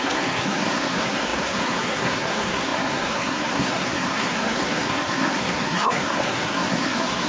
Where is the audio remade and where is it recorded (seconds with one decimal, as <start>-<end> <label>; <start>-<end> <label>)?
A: 0.0-7.3 remade